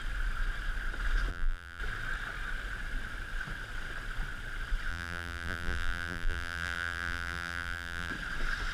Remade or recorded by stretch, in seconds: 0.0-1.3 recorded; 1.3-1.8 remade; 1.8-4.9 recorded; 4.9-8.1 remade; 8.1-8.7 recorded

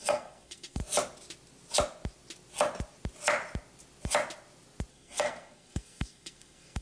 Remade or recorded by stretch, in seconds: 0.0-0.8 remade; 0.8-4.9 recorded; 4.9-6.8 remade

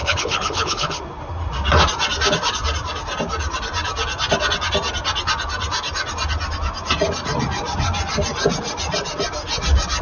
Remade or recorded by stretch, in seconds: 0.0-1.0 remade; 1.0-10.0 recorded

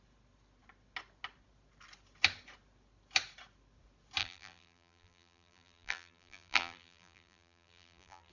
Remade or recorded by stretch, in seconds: 0.0-4.2 recorded; 4.2-8.3 remade

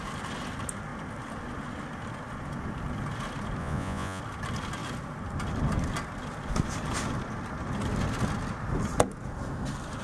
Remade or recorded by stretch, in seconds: 0.0-3.6 recorded; 3.6-4.2 remade; 4.2-10.0 recorded

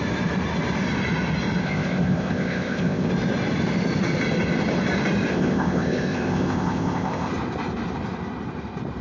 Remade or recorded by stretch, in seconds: 0.0-1.6 recorded; 1.6-3.1 remade; 3.1-5.3 recorded; 5.3-7.3 remade; 7.3-9.0 recorded